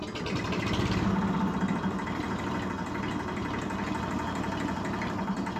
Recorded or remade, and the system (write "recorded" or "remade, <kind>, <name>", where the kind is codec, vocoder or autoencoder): recorded